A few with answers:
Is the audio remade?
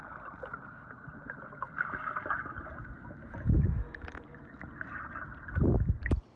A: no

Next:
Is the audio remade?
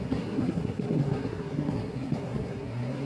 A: yes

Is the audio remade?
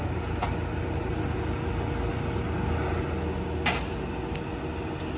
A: no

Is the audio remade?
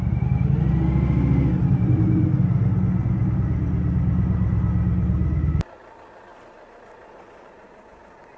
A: no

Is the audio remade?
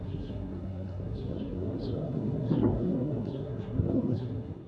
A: yes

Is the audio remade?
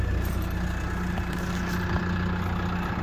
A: no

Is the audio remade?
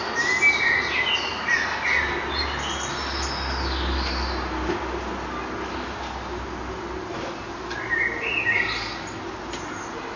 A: no